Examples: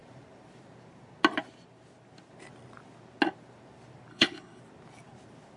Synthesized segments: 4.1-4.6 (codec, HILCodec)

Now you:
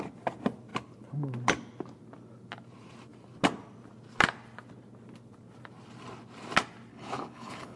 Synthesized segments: 6.9-7.8 (codec, HILCodec)

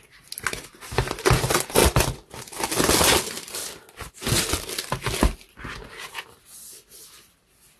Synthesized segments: none

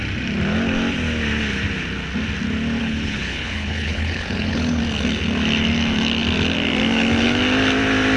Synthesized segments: 2.8-4.8 (codec, HILCodec)

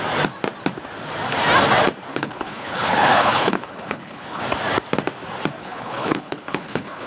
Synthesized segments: 2.1-4.4 (codec, HILCodec); 5.6-7.1

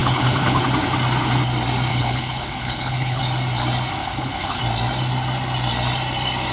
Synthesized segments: 0.0-0.6 (codec, HILCodec); 1.9-3.2; 4.0-4.6

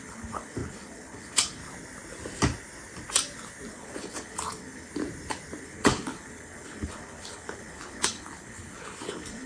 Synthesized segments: 0.0-1.6 (codec, HILCodec); 3.7-4.9; 5.6-9.5

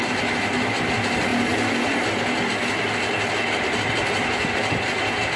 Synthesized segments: none